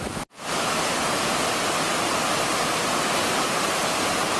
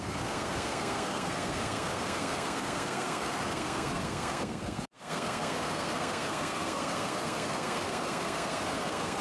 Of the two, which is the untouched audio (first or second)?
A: first